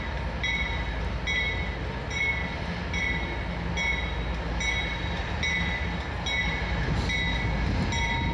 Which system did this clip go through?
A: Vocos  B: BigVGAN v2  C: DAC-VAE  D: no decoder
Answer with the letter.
D